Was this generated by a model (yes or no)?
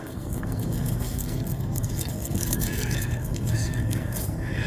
yes